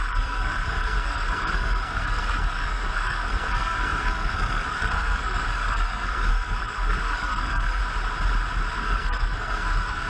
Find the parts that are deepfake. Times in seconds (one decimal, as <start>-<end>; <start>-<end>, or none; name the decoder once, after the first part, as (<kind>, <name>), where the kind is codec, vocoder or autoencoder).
0.0-7.8 (codec, SNAC); 8.7-10.1